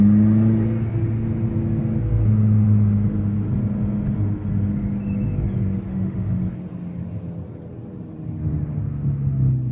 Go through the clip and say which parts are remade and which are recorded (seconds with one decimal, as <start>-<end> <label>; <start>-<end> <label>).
0.0-5.9 recorded; 5.9-6.4 remade; 6.4-9.7 recorded